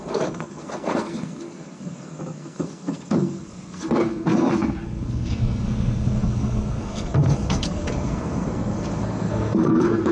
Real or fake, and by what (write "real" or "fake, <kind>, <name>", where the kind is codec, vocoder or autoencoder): fake, codec, SNAC